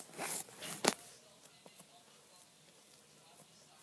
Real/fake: real